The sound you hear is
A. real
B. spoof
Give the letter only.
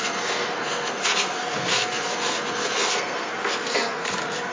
B